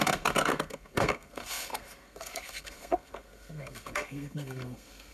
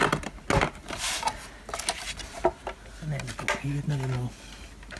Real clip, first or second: second